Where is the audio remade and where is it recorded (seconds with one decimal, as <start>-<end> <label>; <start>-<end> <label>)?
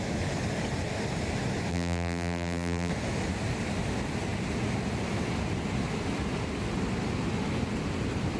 0.0-1.7 recorded; 1.7-2.9 remade; 2.9-8.4 recorded